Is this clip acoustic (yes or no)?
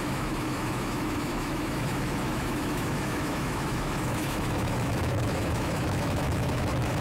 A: no